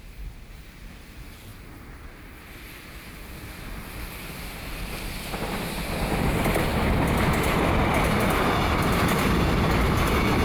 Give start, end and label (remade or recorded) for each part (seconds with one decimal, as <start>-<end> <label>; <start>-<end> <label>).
0.0-10.4 recorded